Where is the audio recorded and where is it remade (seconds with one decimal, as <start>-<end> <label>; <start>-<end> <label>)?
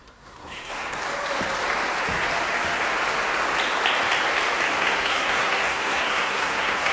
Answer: 0.0-1.0 remade; 1.0-4.8 recorded; 4.8-6.9 remade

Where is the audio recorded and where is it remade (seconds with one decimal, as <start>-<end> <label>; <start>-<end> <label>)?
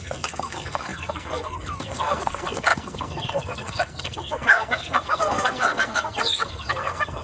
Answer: 0.0-7.2 remade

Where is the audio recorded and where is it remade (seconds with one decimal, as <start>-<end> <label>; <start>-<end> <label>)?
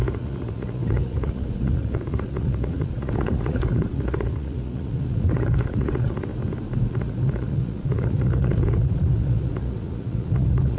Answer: 0.0-6.3 remade; 6.3-6.9 recorded; 6.9-10.8 remade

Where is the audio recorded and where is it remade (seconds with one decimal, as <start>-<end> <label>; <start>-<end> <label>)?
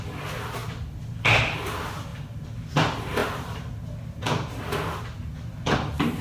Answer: 0.0-6.2 recorded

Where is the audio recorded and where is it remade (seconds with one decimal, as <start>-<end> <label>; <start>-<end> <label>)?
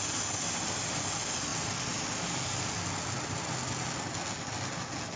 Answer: 0.0-5.2 recorded